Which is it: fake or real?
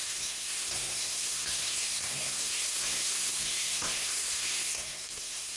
fake